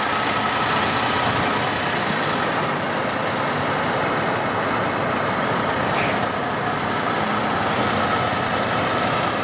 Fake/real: real